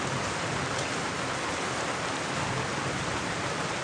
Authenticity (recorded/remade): recorded